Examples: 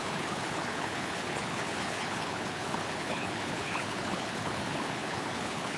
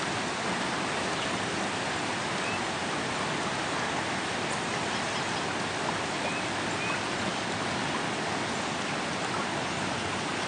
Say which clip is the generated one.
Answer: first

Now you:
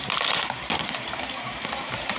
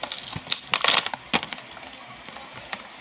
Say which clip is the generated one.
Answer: first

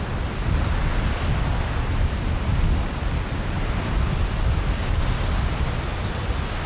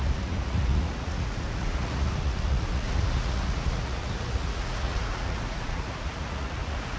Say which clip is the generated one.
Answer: second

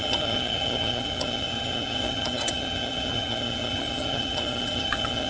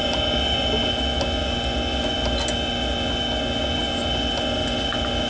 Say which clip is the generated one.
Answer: first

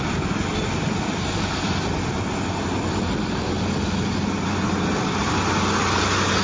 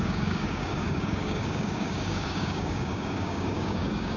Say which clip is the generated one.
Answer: second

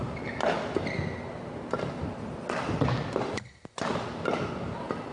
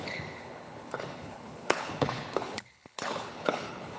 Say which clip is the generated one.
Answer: second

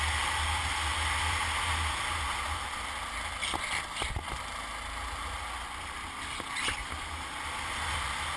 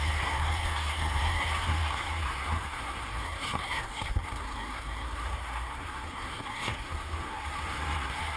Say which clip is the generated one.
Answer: second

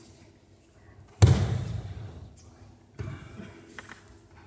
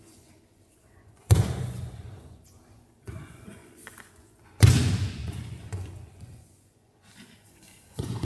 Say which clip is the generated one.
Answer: second